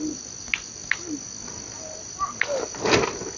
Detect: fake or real real